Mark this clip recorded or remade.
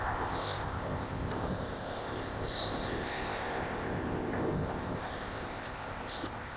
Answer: remade